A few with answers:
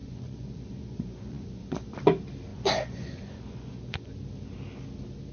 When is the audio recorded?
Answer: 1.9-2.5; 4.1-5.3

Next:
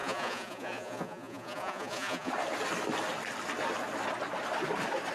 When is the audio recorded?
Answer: 2.3-5.1

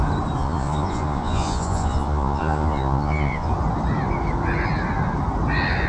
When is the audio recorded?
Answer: 0.0-0.4; 3.5-5.9

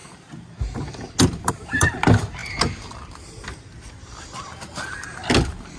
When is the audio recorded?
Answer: 0.0-5.8

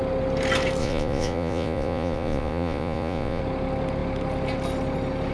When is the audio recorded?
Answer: 0.0-0.8; 3.4-5.3

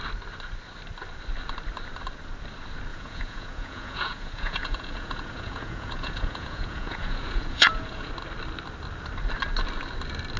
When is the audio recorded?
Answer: 0.0-2.9; 8.1-10.4